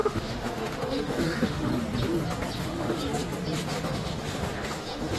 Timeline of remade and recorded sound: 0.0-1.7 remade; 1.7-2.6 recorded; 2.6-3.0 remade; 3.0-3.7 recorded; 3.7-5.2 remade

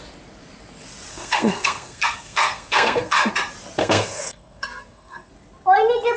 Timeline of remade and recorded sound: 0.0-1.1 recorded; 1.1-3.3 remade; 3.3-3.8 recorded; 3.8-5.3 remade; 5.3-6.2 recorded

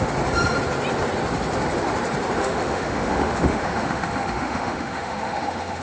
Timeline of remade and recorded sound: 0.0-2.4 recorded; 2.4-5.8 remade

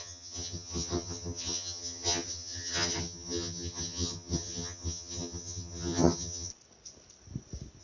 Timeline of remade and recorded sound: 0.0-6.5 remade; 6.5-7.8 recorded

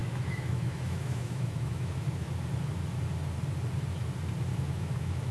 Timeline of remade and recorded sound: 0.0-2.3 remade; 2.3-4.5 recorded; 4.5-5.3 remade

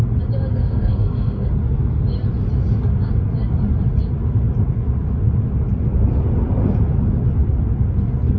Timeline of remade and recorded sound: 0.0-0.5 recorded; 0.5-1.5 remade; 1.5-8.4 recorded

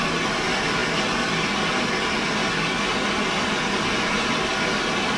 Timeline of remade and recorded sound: 0.0-5.2 recorded